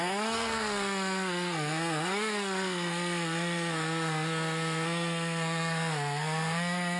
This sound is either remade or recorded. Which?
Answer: remade